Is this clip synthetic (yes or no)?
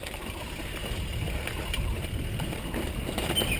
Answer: no